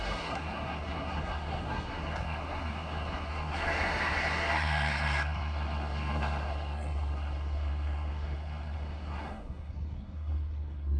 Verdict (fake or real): fake